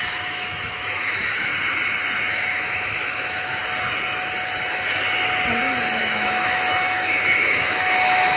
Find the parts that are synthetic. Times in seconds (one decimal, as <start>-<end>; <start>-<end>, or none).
0.0-1.5; 2.3-3.6; 6.0-8.4